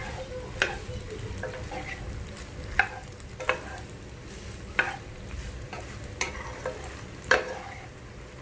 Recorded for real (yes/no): yes